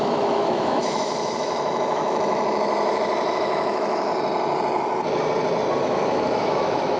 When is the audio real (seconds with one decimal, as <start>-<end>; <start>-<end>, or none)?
4.1-5.8